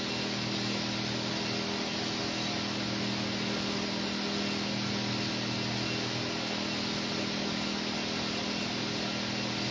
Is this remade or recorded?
recorded